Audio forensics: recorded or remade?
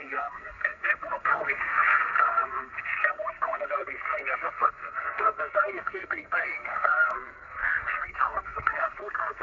remade